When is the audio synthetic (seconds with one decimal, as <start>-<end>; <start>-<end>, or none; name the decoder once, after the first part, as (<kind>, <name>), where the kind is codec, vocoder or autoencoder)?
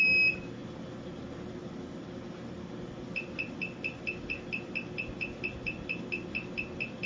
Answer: none